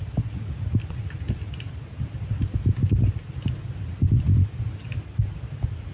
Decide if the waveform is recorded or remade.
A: recorded